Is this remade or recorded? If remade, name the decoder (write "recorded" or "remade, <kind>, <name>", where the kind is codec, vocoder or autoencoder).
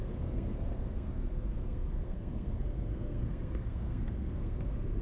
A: remade, codec, SNAC